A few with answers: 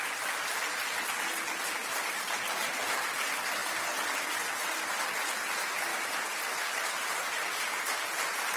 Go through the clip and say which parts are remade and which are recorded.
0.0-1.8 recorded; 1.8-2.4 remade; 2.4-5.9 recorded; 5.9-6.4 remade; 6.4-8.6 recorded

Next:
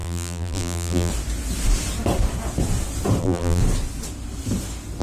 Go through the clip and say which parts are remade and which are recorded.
0.0-1.1 remade; 1.1-3.2 recorded; 3.2-3.6 remade; 3.6-5.0 recorded

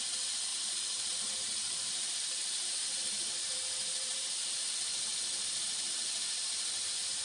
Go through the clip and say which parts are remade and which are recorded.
0.0-0.5 recorded; 0.5-4.6 remade; 4.6-7.2 recorded

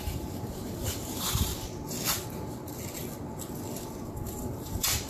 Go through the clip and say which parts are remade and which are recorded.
0.0-1.5 remade; 1.5-4.0 recorded; 4.0-5.1 remade

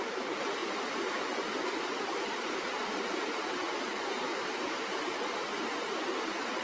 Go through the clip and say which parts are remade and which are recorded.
0.0-0.6 remade; 0.6-4.6 recorded; 4.6-6.6 remade

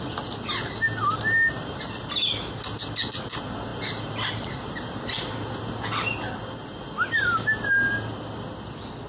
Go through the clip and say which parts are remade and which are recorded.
0.0-9.1 recorded

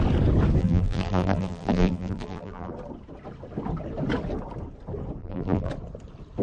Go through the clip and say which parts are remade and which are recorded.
0.0-0.6 recorded; 0.6-2.7 remade; 2.7-5.2 recorded; 5.2-5.7 remade; 5.7-6.4 recorded